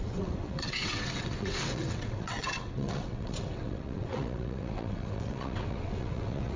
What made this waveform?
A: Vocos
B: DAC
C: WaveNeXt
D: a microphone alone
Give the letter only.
C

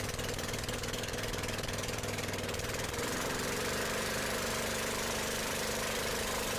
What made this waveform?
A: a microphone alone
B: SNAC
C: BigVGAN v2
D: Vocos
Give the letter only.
C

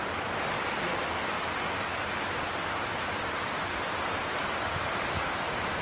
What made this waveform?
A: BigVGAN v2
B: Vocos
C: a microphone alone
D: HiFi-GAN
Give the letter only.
C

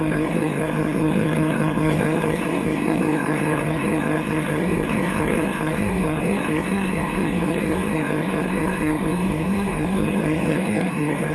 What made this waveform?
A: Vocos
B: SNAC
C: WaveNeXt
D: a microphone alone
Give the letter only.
B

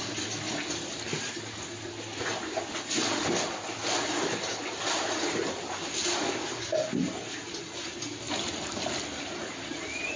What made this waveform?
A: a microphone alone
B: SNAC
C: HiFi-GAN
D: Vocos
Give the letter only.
A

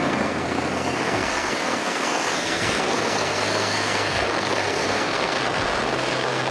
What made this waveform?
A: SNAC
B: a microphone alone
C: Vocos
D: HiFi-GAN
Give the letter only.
A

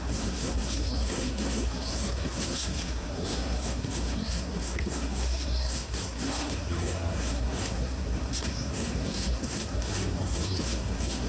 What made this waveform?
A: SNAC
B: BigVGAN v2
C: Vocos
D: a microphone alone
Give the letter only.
A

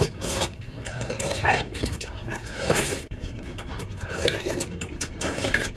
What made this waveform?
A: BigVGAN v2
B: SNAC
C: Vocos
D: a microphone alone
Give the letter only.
B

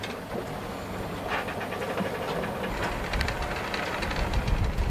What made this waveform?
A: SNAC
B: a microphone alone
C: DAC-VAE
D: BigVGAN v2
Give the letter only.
B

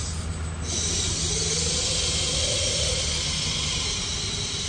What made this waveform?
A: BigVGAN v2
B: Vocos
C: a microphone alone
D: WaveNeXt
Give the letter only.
C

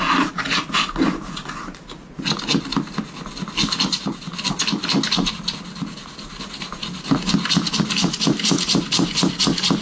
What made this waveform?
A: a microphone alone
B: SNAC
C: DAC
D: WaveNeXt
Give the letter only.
A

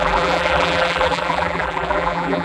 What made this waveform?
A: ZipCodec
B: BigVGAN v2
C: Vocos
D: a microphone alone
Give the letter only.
B